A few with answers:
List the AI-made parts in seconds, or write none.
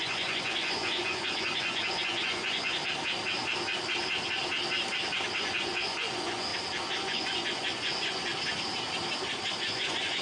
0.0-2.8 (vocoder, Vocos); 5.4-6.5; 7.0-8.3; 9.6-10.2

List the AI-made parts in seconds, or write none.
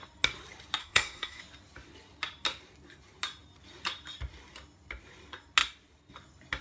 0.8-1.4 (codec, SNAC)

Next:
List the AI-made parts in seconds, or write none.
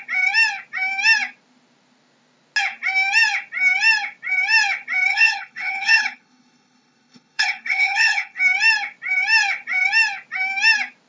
5.1-8.4 (codec, HILCodec)